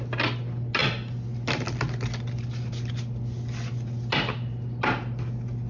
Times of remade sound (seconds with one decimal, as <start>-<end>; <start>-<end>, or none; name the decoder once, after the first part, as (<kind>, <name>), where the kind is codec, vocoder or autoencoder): none